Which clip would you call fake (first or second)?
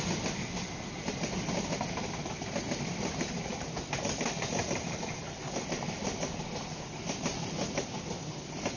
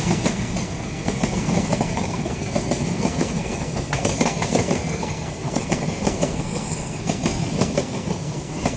second